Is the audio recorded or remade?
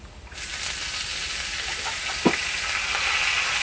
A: recorded